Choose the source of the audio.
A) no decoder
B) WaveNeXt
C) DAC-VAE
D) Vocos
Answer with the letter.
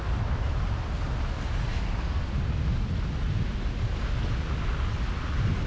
A